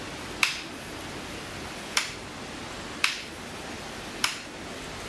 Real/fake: real